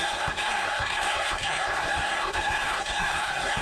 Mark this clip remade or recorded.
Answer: remade